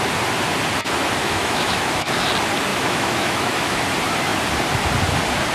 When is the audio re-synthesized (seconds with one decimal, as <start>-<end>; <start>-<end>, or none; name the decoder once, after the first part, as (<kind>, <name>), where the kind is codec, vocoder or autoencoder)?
1.2-2.1 (autoencoder, DAC-VAE); 2.7-3.8